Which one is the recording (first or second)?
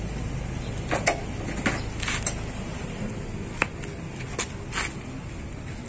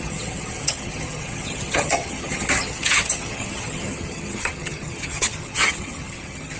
first